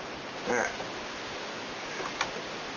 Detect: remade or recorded recorded